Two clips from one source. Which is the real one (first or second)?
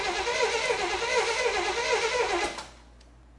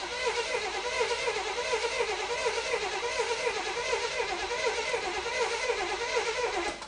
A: first